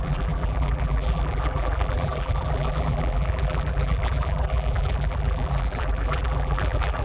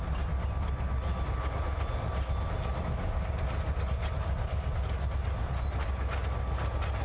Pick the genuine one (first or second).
second